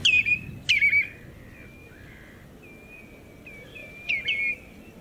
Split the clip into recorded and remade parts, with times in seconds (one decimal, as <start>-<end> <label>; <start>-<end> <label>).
0.0-5.0 recorded